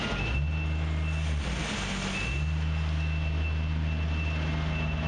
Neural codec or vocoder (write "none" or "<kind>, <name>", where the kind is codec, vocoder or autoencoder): none